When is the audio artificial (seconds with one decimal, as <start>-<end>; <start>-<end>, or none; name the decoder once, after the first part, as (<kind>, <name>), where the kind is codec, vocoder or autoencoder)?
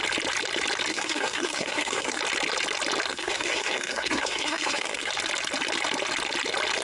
0.9-2.2 (codec, SNAC); 3.1-5.1